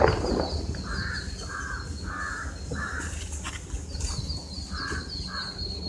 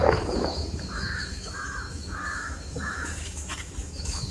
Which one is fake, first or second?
second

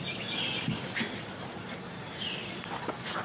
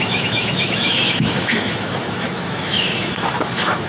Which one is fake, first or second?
second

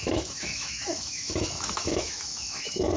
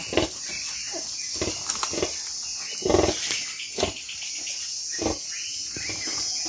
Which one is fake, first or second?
first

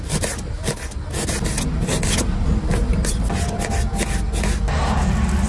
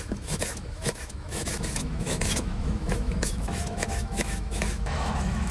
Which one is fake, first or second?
second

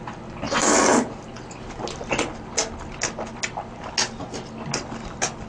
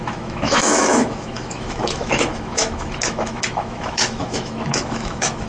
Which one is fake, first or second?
second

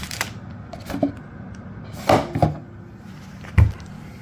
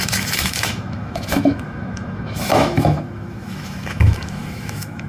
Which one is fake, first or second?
second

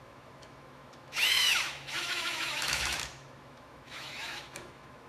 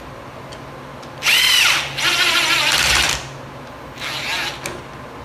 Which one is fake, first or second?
first